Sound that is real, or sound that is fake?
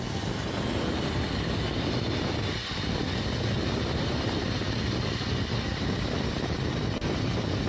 real